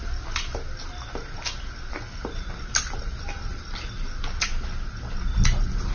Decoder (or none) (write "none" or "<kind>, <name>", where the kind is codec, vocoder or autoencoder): none